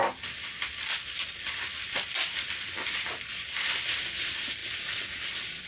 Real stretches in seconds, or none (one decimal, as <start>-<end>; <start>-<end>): 4.6-5.7

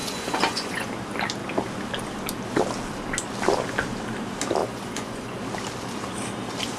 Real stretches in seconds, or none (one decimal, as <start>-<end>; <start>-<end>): 0.9-4.6; 5.4-6.8

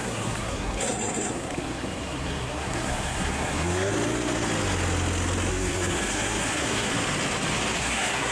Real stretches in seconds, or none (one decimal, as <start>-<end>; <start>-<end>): 3.9-5.5; 6.9-7.8

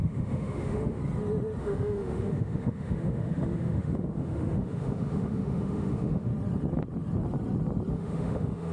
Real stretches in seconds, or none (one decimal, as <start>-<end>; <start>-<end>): 1.0-1.6; 6.3-7.9

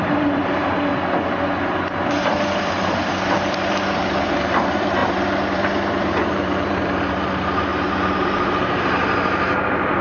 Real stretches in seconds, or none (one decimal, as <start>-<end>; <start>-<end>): 0.9-2.7

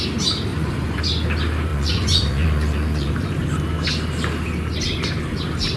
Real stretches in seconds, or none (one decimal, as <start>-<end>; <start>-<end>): 0.0-0.5; 1.0-1.7; 3.1-5.8